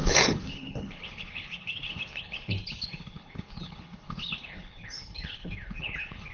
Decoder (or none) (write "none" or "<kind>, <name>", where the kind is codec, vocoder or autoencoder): codec, HILCodec